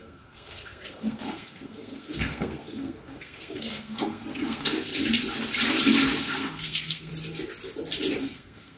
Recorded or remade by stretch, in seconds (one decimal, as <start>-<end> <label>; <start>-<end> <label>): 0.0-4.9 remade; 4.9-6.2 recorded; 6.2-7.1 remade; 7.1-8.2 recorded; 8.2-8.8 remade